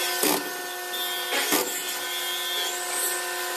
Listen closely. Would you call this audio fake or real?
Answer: real